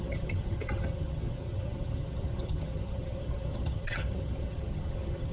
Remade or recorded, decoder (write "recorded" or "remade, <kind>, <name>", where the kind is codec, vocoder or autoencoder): remade, vocoder, HiFi-GAN